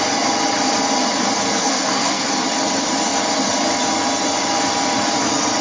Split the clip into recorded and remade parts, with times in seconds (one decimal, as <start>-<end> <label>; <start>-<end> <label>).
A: 0.0-1.6 recorded; 1.6-2.3 remade; 2.3-5.6 recorded